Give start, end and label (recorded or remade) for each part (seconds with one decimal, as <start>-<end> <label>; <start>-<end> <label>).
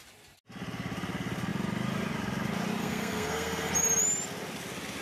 0.0-2.8 recorded; 2.8-3.7 remade; 3.7-5.0 recorded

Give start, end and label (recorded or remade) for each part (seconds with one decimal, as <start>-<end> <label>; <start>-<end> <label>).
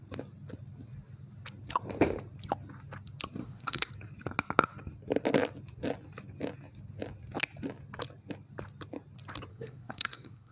0.0-3.4 recorded; 3.4-3.9 remade; 3.9-9.5 recorded; 9.5-10.5 remade